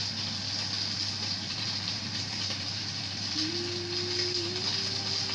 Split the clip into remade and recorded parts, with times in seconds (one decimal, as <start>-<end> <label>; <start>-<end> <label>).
0.0-1.5 recorded; 1.5-3.5 remade; 3.5-5.3 recorded